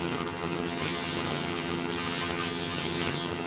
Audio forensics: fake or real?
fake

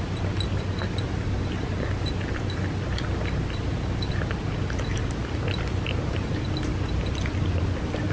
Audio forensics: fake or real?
real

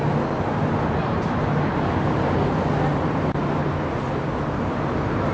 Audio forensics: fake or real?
real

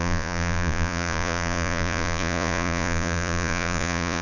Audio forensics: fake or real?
fake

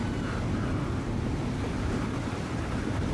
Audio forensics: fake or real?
real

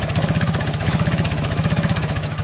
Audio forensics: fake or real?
fake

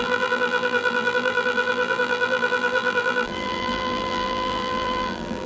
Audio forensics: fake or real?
fake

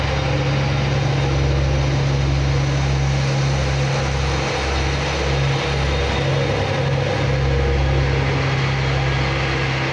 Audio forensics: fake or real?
real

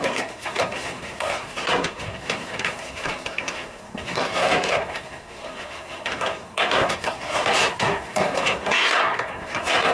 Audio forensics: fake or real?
fake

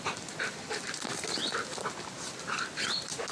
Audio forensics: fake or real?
real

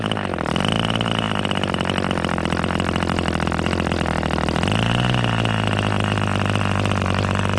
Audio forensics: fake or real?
real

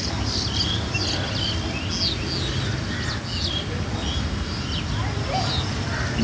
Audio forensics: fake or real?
real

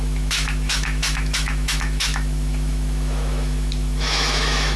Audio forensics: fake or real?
fake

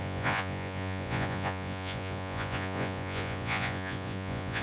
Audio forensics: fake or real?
fake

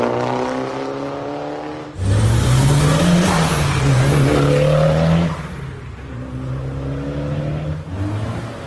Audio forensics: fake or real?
real